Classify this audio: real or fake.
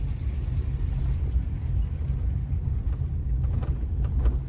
real